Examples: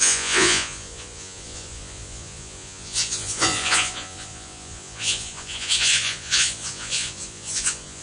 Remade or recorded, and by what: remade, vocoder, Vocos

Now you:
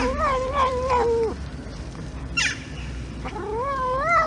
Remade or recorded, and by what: remade, vocoder, BigVGAN v2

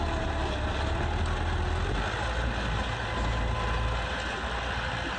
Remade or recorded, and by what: recorded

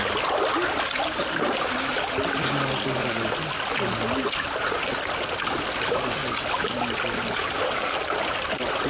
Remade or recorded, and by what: recorded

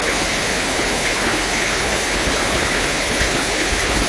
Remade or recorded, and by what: remade, codec, HILCodec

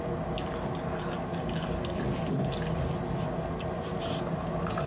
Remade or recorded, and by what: recorded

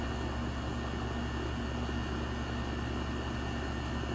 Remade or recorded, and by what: recorded